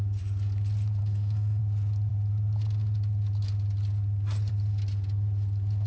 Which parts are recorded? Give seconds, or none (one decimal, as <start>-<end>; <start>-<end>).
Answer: 0.0-1.0; 1.6-5.9